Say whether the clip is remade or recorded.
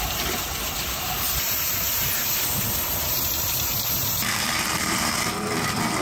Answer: remade